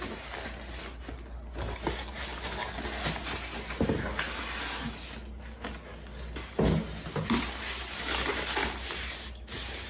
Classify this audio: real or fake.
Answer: real